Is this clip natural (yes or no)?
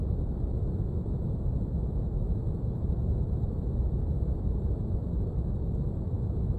no